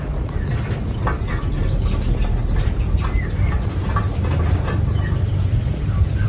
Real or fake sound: real